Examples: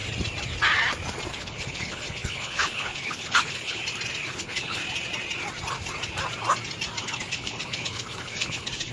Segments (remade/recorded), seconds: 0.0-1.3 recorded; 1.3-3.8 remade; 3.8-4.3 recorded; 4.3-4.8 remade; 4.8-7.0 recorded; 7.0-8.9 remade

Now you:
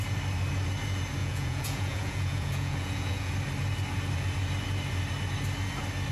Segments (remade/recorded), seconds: 0.0-1.2 recorded; 1.2-3.3 remade; 3.3-6.1 recorded

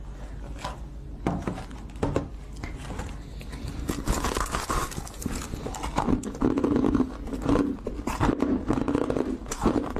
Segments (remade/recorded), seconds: 0.0-10.0 recorded